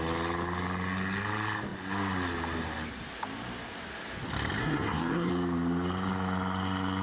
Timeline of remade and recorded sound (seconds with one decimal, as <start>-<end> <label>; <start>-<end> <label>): 0.0-4.6 recorded; 4.6-5.3 remade; 5.3-7.0 recorded